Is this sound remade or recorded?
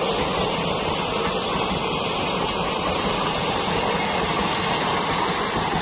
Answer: recorded